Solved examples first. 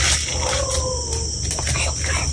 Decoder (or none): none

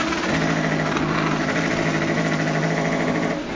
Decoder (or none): none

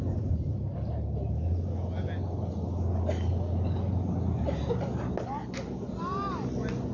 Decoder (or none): none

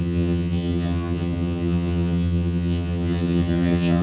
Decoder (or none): vocoder, HiFi-GAN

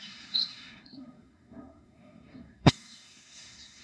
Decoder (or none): codec, SNAC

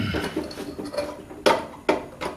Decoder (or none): none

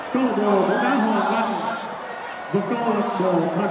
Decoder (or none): none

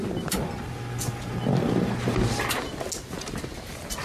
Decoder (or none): none